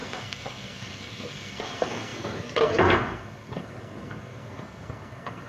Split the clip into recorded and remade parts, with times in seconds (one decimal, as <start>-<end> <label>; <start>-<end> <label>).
0.0-5.5 remade